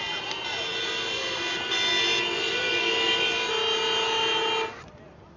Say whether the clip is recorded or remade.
recorded